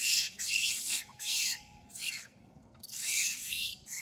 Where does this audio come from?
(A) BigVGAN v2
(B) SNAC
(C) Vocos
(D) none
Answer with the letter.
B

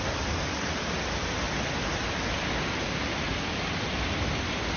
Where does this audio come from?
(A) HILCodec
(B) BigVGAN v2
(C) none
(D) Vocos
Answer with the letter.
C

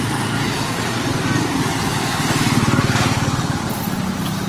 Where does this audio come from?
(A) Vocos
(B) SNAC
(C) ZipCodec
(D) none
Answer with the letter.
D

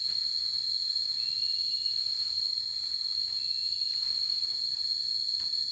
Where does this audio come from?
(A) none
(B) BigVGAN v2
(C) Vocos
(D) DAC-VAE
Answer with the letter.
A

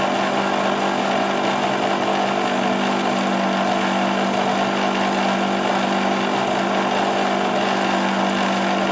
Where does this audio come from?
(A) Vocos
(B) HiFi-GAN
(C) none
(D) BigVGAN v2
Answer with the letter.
C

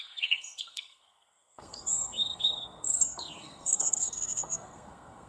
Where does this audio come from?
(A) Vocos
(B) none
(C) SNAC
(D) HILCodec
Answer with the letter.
C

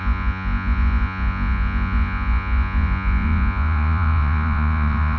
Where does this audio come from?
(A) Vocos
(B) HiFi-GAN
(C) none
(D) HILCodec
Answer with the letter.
A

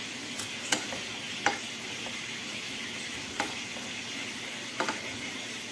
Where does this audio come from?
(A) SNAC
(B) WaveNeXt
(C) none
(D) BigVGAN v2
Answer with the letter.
C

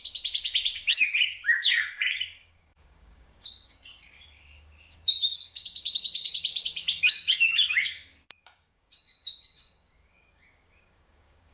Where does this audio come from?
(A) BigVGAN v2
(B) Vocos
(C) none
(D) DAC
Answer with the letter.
D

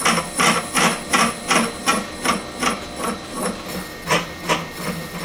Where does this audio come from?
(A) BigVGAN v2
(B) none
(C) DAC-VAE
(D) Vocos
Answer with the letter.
B